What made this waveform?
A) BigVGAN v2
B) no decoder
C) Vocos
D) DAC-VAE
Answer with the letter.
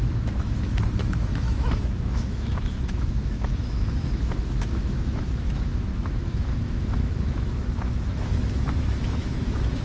D